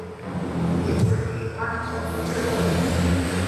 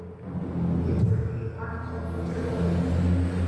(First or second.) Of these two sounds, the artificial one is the first